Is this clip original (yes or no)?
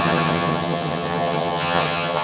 no